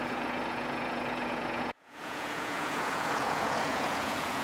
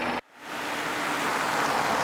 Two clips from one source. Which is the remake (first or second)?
first